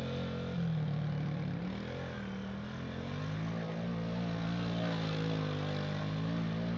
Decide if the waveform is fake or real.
real